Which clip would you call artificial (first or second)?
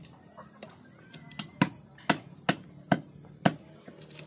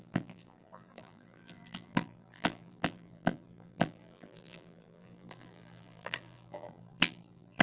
second